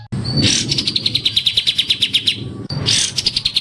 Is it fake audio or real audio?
real